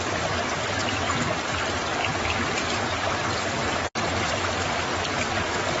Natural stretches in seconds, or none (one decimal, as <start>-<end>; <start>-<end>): 0.0-5.8